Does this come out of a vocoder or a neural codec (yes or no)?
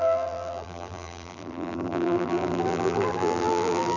yes